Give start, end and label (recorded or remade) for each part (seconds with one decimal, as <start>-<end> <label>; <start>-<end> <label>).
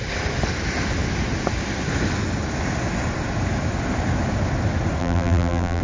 0.0-5.0 recorded; 5.0-5.8 remade